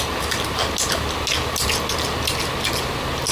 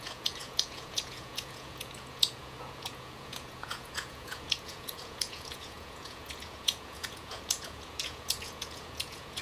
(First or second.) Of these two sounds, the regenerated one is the second